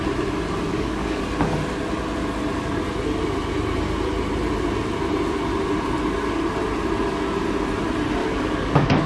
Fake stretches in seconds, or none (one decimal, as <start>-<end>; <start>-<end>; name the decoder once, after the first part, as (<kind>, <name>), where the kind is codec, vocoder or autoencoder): 0.7-1.2 (codec, DAC); 8.2-9.1